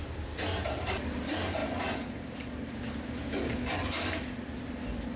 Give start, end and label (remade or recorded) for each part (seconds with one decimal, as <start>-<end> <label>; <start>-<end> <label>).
0.0-5.2 recorded